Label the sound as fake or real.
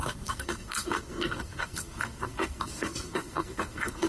fake